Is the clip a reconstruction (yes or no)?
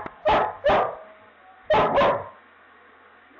no